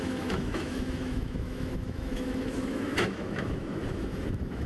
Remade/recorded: remade